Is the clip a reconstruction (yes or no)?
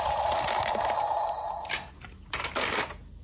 no